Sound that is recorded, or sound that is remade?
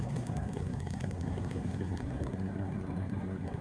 remade